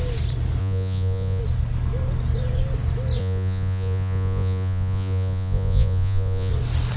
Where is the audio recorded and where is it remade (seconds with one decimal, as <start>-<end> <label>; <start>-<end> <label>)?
0.0-0.6 recorded; 0.6-1.4 remade; 1.4-3.2 recorded; 3.2-6.5 remade; 6.5-7.0 recorded